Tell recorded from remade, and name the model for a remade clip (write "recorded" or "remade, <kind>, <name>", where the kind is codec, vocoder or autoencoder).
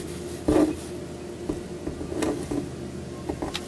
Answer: recorded